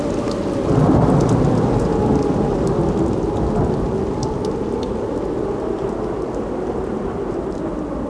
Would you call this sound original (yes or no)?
yes